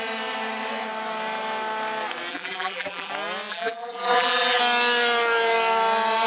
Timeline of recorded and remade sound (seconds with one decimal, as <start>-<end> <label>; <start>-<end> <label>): 0.0-2.3 recorded; 2.3-3.1 remade; 3.1-3.5 recorded; 3.5-4.6 remade; 4.6-6.3 recorded